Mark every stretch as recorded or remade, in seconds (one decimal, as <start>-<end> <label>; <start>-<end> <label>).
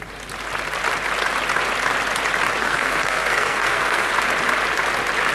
0.0-2.6 recorded; 2.6-4.1 remade; 4.1-5.3 recorded